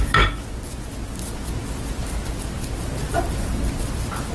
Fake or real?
real